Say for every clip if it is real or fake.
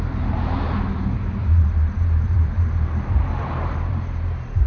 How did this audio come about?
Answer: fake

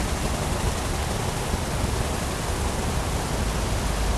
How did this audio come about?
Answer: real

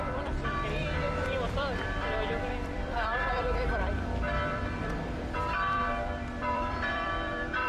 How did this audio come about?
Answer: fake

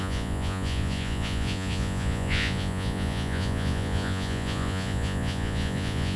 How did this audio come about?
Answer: fake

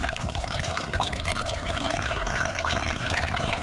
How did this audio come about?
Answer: fake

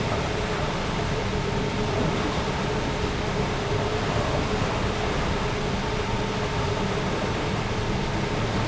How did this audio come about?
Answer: real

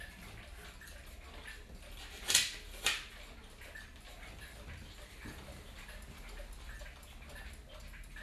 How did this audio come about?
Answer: real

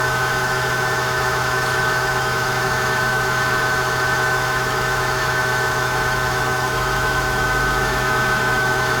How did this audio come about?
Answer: fake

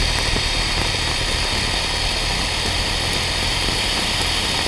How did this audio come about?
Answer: real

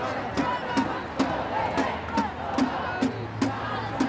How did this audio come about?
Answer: real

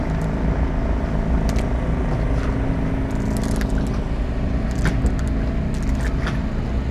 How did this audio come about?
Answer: real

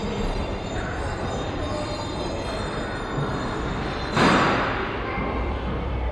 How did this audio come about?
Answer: fake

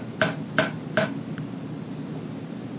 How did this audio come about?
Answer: real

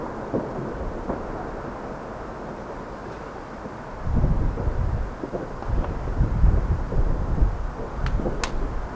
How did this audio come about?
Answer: real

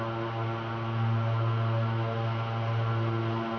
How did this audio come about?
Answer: real